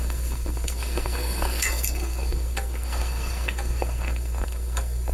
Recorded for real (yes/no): no